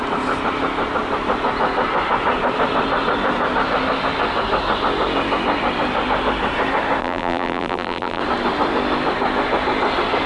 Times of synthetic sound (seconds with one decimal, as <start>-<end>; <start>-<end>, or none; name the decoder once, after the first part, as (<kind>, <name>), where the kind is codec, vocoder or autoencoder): 7.0-8.2 (vocoder, BigVGAN v2)